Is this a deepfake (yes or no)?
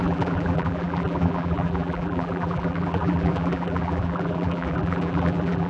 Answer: yes